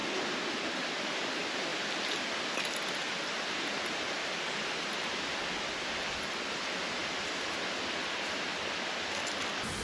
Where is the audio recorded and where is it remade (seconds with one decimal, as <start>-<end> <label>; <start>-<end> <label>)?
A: 0.0-0.7 remade; 0.7-9.8 recorded